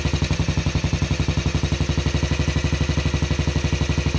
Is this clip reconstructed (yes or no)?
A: no